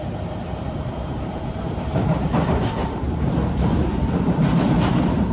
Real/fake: fake